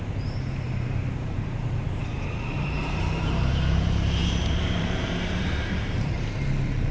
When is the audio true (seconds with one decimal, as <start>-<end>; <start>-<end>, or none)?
none